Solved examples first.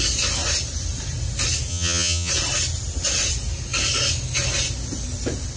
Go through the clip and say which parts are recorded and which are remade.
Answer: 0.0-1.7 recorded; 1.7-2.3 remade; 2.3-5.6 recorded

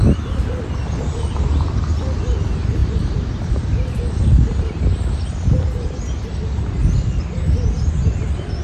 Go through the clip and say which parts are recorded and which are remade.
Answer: 0.0-2.8 recorded; 2.8-4.1 remade; 4.1-8.6 recorded

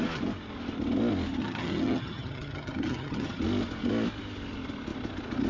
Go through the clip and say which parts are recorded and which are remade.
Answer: 0.0-1.4 recorded; 1.4-3.4 remade; 3.4-5.5 recorded